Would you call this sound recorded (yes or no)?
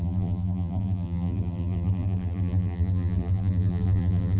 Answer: no